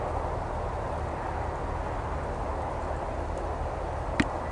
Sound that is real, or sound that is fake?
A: real